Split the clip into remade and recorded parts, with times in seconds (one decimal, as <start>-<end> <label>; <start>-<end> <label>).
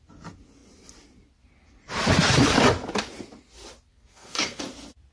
0.0-3.9 recorded; 3.9-4.6 remade; 4.6-5.1 recorded